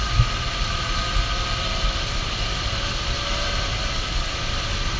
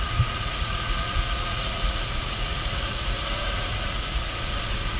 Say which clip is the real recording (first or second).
first